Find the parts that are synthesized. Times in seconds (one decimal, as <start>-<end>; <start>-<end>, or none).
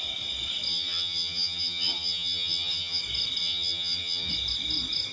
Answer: 0.7-3.0; 3.4-4.3